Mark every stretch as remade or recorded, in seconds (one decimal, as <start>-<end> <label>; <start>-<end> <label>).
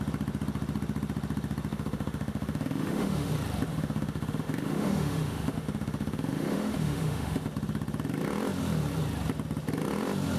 0.0-1.7 recorded; 1.7-3.3 remade; 3.3-3.7 recorded; 3.7-7.5 remade; 7.5-10.4 recorded